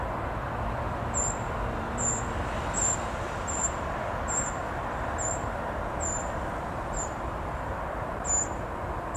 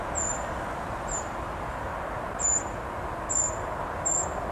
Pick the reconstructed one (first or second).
first